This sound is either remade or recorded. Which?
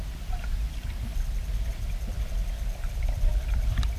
recorded